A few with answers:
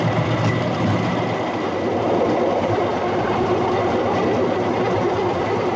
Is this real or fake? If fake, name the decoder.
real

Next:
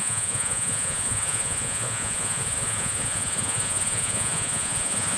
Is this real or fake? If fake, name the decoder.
fake, vocoder, Vocos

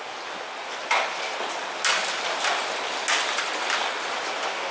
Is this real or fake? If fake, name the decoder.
real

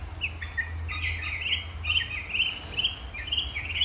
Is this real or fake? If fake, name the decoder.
real